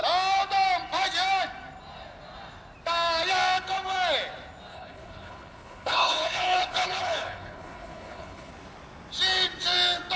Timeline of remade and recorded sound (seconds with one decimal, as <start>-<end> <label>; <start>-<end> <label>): 0.0-4.7 recorded; 4.7-8.5 remade; 8.5-10.2 recorded